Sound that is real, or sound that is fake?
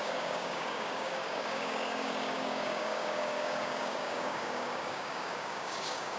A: fake